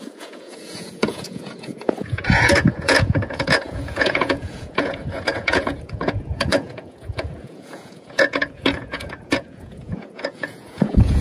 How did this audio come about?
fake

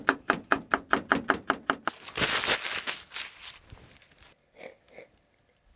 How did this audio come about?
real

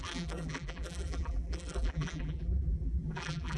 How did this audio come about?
fake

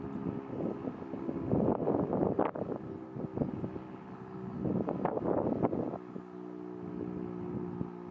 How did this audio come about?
real